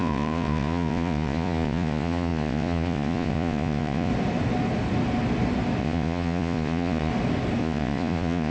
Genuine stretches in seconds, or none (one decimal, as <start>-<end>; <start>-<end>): 4.1-5.8; 7.1-7.6